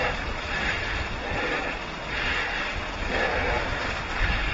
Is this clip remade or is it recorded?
recorded